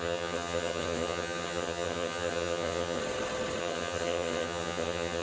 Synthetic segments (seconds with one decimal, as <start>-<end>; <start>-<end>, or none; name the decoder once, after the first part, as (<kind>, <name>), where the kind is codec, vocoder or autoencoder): 0.0-3.0 (vocoder, HiFi-GAN); 3.6-5.2